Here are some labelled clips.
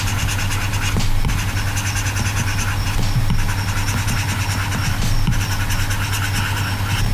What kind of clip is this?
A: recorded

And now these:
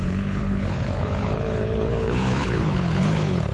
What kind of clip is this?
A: remade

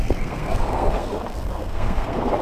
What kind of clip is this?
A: remade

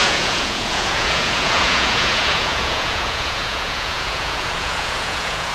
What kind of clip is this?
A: remade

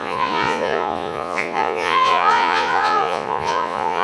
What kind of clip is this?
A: remade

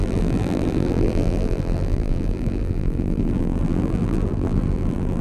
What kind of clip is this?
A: remade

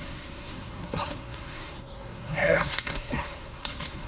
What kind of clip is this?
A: remade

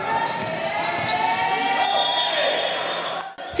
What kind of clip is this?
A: recorded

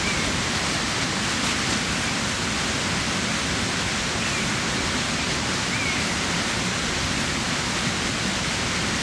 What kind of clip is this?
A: recorded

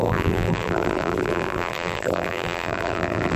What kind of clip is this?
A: remade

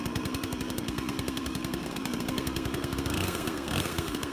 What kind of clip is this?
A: remade